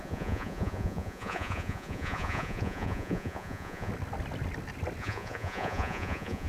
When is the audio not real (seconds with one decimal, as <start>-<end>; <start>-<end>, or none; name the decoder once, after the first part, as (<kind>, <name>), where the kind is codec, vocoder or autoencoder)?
0.0-3.9 (vocoder, Vocos); 5.0-6.5